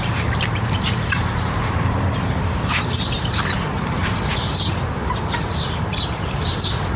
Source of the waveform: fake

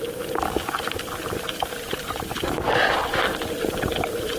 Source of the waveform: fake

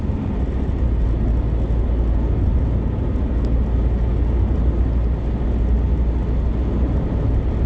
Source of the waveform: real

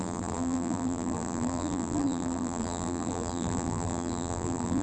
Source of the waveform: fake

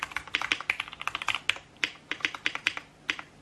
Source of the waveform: real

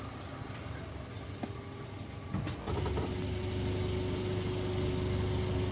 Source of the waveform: real